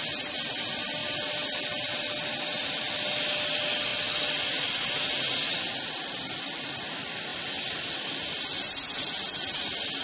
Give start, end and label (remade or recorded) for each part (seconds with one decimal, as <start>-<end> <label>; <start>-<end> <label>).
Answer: 0.0-10.0 recorded